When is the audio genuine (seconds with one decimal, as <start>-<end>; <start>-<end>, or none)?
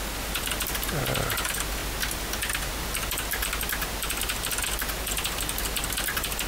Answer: 0.0-6.5